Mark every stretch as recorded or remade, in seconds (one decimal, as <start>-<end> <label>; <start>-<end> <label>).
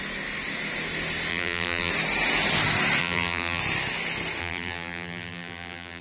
0.0-1.3 recorded; 1.3-1.9 remade; 1.9-3.0 recorded; 3.0-3.6 remade; 3.6-4.4 recorded; 4.4-6.0 remade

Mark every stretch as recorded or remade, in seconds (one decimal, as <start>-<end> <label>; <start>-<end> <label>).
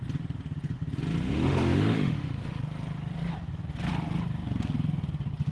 0.0-1.2 recorded; 1.2-2.6 remade; 2.6-5.5 recorded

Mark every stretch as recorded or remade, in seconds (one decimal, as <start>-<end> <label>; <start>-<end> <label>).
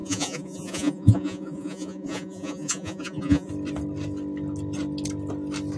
0.0-3.5 remade; 3.5-5.8 recorded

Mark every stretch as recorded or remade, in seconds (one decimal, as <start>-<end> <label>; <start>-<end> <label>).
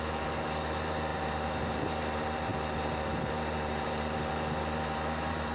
0.0-5.5 remade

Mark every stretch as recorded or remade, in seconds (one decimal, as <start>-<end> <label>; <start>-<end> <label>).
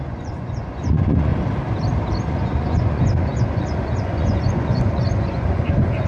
0.0-1.3 remade; 1.3-2.3 recorded; 2.3-6.1 remade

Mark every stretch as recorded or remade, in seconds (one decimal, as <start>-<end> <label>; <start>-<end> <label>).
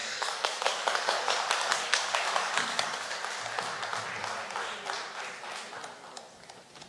0.0-3.2 remade; 3.2-6.9 recorded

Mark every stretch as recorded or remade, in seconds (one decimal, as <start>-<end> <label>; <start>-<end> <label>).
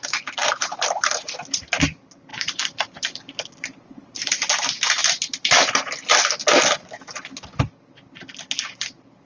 0.0-0.4 recorded; 0.4-1.8 remade; 1.8-2.3 recorded; 2.3-4.5 remade; 4.5-9.3 recorded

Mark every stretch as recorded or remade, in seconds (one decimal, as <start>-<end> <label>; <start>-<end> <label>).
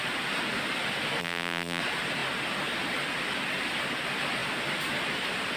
0.0-1.2 recorded; 1.2-1.8 remade; 1.8-5.6 recorded